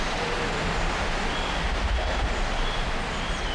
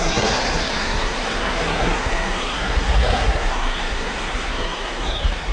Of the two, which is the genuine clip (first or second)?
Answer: first